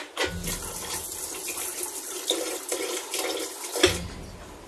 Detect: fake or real real